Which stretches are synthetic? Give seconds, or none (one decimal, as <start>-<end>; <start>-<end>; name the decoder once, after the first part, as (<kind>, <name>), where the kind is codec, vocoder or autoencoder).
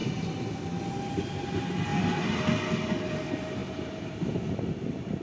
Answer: 1.9-2.9 (vocoder, BigVGAN v2); 3.6-5.2